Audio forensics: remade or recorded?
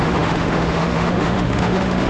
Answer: remade